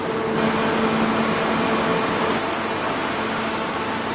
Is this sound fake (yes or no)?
no